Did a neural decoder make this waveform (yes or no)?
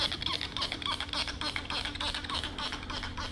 no